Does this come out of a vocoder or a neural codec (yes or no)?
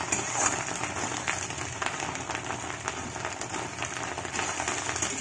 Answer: no